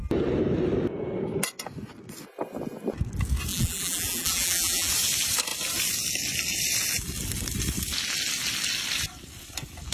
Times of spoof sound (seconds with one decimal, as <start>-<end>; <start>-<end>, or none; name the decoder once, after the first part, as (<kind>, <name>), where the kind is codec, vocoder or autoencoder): 3.5-4.9 (vocoder, BigVGAN v2)